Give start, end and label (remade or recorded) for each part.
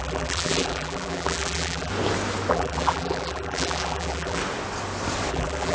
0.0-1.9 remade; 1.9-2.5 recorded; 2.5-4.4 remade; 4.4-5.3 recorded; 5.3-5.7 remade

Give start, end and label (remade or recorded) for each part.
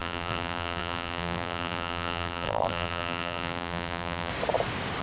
0.0-4.3 remade; 4.3-5.0 recorded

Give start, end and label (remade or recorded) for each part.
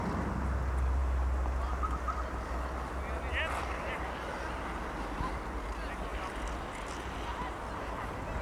0.0-6.1 recorded; 6.1-7.3 remade; 7.3-8.4 recorded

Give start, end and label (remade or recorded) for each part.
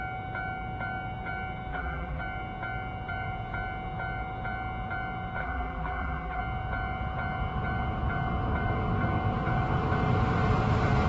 0.0-1.7 recorded; 1.7-2.2 remade; 2.2-5.4 recorded; 5.4-6.4 remade; 6.4-11.1 recorded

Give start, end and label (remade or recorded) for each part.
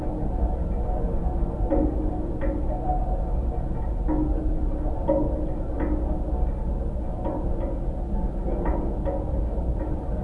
0.0-4.4 recorded; 4.4-5.6 remade; 5.6-10.2 recorded